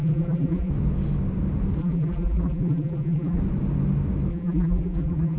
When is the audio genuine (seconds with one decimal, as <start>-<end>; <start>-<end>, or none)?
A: 0.7-1.8; 3.4-4.3